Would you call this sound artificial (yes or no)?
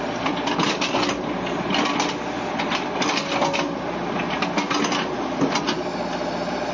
no